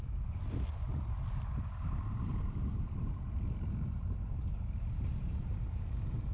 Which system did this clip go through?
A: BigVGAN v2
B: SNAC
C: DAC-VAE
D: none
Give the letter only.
D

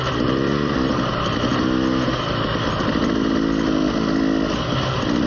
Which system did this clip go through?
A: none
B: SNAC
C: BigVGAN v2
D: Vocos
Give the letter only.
A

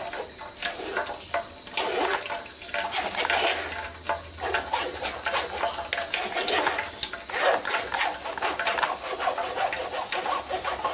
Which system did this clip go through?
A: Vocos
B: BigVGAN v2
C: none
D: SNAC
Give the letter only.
C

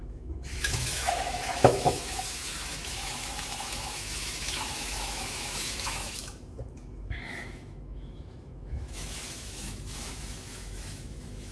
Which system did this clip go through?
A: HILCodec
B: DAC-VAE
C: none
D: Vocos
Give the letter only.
B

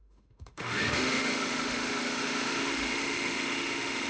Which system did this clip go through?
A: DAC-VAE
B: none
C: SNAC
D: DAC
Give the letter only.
A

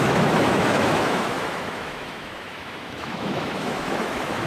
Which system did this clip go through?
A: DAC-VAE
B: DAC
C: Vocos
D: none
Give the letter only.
A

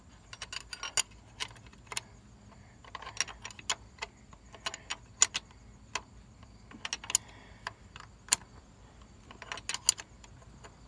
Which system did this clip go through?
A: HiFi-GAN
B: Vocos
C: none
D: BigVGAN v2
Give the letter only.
C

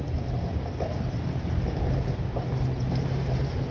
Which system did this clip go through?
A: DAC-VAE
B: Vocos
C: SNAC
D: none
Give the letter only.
D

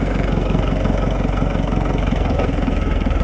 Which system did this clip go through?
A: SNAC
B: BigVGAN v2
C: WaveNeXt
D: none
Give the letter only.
A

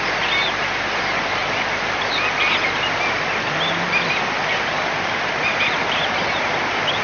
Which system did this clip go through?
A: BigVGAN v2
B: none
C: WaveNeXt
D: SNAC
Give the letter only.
B